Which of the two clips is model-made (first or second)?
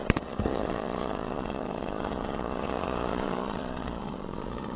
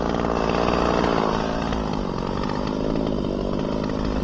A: first